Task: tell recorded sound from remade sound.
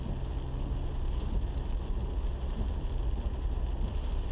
recorded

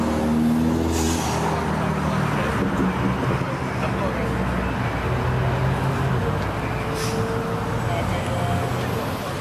recorded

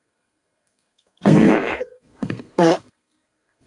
remade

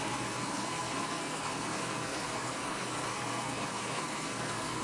remade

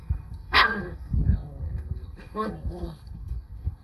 remade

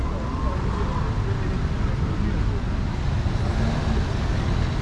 recorded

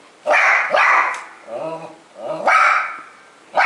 recorded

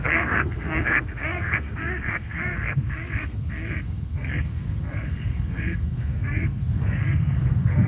remade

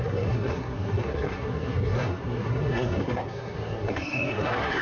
remade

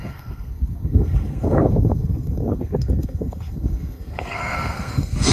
remade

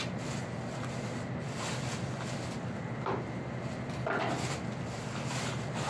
recorded